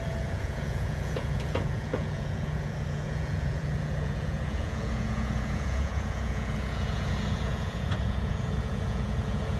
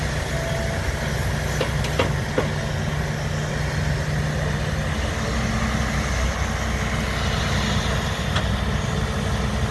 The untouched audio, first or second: second